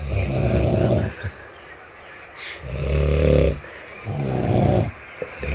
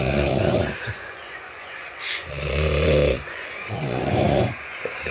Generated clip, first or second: second